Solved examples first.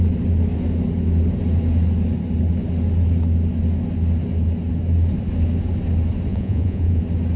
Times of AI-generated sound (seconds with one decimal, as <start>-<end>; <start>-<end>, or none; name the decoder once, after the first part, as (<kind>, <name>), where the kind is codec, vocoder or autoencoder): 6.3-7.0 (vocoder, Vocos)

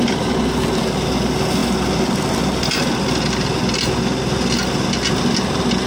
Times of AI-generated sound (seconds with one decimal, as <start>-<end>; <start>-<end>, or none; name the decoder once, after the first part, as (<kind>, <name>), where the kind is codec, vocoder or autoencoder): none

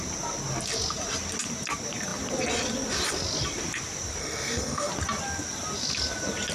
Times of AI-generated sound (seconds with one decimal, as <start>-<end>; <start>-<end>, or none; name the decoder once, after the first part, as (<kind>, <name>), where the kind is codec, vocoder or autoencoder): 4.2-4.9 (codec, SNAC)

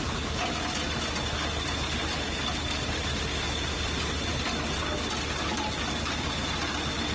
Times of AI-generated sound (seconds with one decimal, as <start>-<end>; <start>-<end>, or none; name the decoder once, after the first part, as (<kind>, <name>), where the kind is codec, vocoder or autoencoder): none

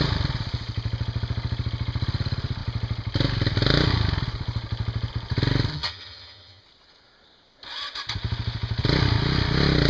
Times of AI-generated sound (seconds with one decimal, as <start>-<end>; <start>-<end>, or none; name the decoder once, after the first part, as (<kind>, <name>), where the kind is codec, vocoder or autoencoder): 5.7-6.6 (vocoder, HiFi-GAN)

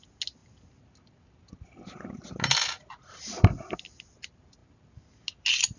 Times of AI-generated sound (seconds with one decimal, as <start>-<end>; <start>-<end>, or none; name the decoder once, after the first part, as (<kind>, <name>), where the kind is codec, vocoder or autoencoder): none

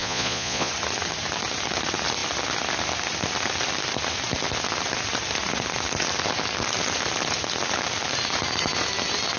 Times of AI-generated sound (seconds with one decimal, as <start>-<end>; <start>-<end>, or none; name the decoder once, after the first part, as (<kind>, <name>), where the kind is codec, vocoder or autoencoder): 0.0-0.7 (vocoder, Vocos)

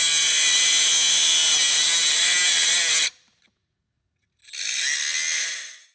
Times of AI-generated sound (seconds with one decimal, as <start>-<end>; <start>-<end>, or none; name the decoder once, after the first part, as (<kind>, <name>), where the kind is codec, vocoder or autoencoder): 3.5-4.4 (vocoder, Vocos); 5.4-5.9